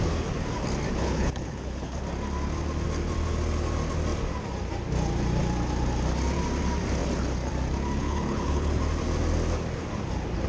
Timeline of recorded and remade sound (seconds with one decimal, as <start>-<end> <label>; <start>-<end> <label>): 0.0-0.9 recorded; 0.9-2.0 remade; 2.0-8.0 recorded; 8.0-8.8 remade; 8.8-10.5 recorded